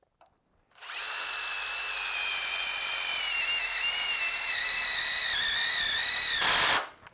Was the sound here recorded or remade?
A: recorded